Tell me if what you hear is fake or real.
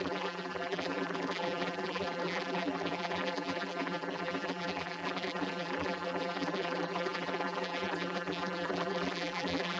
fake